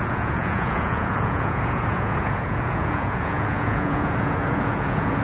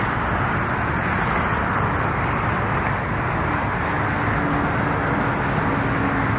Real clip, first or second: second